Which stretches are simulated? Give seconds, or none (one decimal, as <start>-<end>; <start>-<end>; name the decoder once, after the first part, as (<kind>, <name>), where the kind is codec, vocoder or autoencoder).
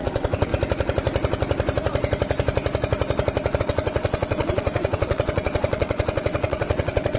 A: 0.0-0.5 (vocoder, WaveNeXt); 3.6-7.2